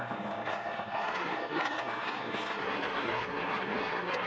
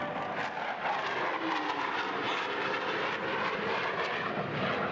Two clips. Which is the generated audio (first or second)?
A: first